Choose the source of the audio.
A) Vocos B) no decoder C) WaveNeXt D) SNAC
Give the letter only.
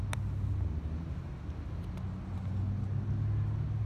B